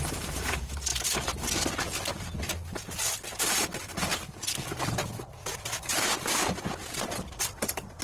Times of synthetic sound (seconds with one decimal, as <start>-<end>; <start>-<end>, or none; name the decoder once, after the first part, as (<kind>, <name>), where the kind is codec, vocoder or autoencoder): 0.0-0.9 (vocoder, BigVGAN v2); 3.5-4.1; 7.4-8.0